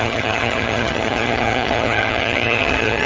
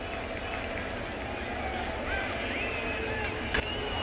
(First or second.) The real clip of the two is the second